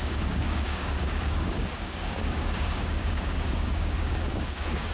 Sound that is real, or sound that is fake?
fake